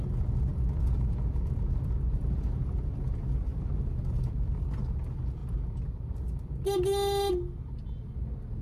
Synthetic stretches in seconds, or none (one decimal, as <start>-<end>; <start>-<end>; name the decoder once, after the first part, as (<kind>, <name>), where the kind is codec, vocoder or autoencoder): none